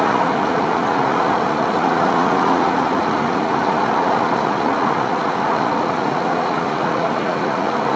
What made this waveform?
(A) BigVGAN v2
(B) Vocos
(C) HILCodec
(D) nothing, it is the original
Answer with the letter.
B